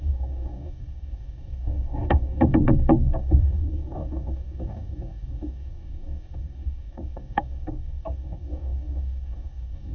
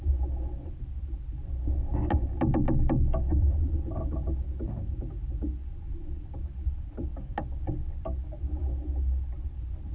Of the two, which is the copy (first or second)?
first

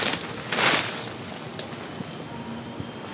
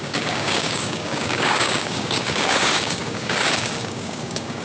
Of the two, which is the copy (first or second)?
second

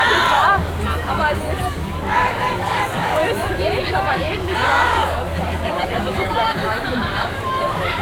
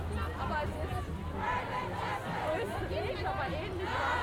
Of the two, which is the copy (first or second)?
first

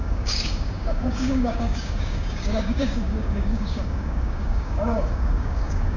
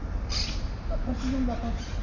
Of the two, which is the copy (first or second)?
first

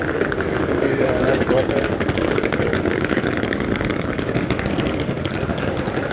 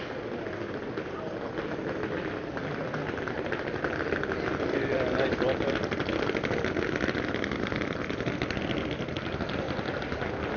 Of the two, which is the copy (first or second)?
first